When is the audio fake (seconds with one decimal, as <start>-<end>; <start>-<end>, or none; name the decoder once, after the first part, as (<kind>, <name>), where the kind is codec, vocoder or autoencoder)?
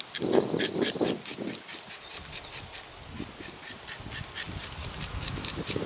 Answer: none